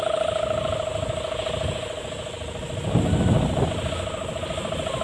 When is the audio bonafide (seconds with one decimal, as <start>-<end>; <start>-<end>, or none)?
0.0-5.0